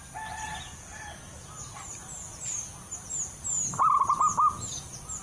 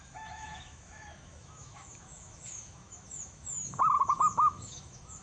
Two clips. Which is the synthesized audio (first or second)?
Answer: second